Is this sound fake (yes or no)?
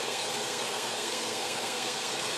yes